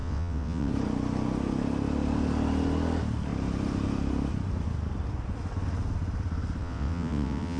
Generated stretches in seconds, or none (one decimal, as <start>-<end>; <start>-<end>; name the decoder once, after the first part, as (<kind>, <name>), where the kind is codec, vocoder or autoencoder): 0.0-0.7 (vocoder, WaveNeXt); 6.6-7.6